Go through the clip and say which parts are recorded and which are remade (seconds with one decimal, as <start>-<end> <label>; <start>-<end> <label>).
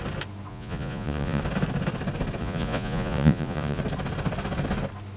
0.0-0.5 recorded; 0.5-1.4 remade; 1.4-2.4 recorded; 2.4-3.8 remade; 3.8-5.2 recorded